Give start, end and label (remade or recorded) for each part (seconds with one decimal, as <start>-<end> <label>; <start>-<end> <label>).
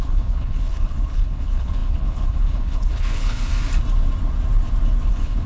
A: 0.0-3.5 remade; 3.5-5.1 recorded; 5.1-5.5 remade